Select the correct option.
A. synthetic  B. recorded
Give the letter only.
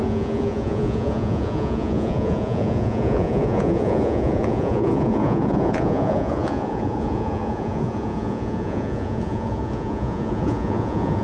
A